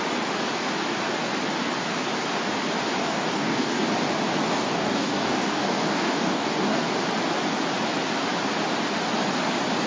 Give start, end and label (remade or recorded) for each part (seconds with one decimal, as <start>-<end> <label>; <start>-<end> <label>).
0.0-3.0 recorded; 3.0-3.9 remade; 3.9-4.5 recorded; 4.5-6.8 remade; 6.8-9.9 recorded